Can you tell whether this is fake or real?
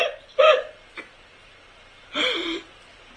real